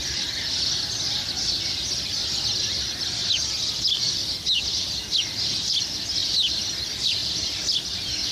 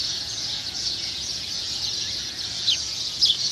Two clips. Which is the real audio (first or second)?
first